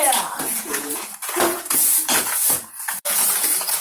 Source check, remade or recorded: remade